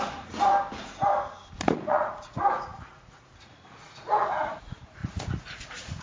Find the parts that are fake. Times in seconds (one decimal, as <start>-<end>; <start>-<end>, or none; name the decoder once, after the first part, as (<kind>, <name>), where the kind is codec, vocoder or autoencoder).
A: 0.0-0.5 (vocoder, Vocos); 1.9-6.0